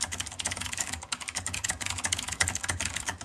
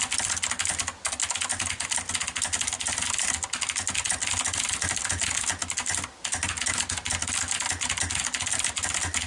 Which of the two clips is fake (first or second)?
first